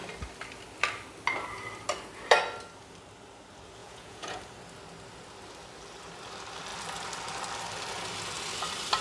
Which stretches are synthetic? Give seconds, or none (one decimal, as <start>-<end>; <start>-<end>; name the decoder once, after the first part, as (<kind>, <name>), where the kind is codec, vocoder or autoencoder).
3.8-4.4 (vocoder, Vocos)

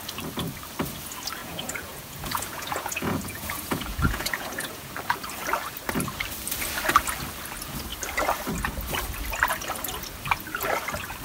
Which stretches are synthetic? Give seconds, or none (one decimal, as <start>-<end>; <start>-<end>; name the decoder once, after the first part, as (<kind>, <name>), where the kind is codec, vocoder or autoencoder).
1.4-4.9 (vocoder, Vocos)

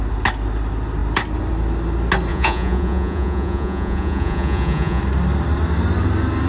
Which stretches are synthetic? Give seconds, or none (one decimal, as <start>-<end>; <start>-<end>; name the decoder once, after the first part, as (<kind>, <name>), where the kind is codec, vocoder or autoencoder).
2.3-5.0 (vocoder, Vocos)

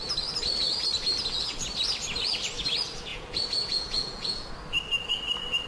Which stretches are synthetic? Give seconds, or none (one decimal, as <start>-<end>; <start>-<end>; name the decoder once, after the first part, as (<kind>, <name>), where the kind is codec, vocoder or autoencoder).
3.1-4.5 (vocoder, Vocos)

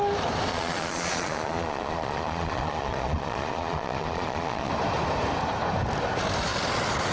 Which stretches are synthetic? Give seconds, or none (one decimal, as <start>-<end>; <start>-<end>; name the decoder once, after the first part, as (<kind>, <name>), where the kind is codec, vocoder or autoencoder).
0.5-4.7 (vocoder, Vocos)

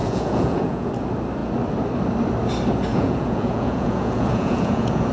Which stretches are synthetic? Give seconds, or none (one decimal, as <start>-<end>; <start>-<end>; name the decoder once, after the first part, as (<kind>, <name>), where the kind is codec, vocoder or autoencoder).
0.0-0.9 (vocoder, Vocos); 2.9-5.1